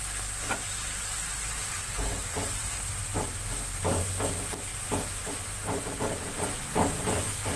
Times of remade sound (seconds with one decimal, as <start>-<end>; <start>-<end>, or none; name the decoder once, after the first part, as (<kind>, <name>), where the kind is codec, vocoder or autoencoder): none